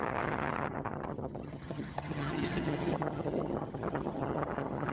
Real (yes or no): no